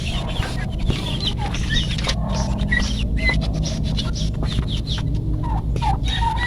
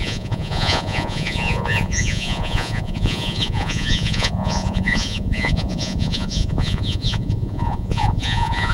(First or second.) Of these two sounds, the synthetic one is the second